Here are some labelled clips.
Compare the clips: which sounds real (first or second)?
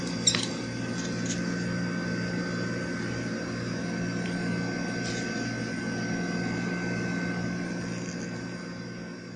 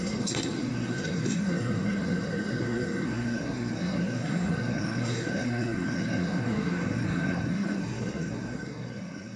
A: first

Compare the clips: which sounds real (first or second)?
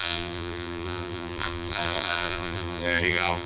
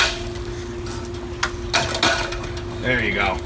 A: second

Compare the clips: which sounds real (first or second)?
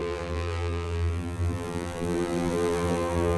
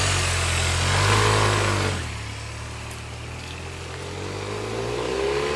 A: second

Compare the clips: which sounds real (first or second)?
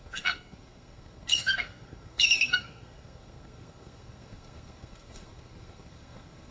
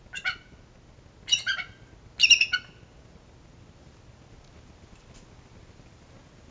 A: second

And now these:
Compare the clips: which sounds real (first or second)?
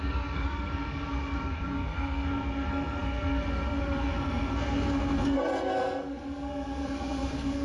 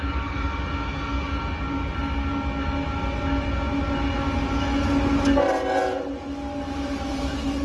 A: second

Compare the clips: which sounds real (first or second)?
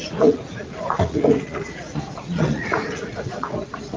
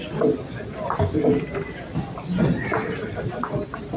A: second